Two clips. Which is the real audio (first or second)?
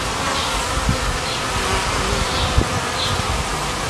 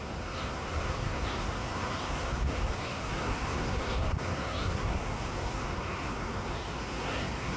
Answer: first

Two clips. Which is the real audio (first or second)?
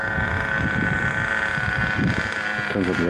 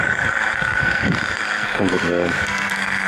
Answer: first